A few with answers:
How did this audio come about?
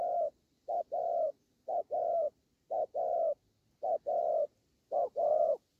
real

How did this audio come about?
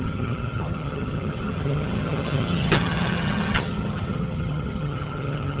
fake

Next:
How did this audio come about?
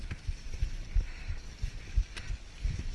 real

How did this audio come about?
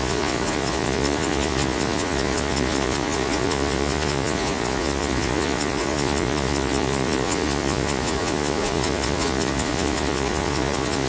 fake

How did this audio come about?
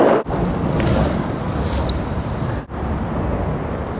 real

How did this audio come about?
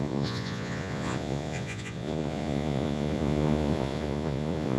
fake